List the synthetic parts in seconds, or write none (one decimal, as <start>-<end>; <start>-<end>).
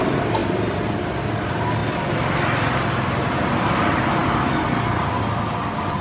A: none